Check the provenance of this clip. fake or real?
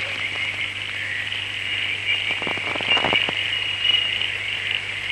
real